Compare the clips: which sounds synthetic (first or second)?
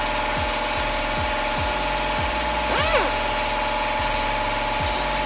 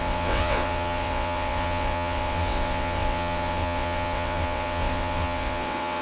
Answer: second